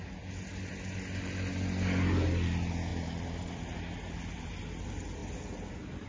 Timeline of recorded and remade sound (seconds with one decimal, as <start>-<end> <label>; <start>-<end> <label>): 0.0-2.9 recorded; 2.9-4.6 remade; 4.6-6.1 recorded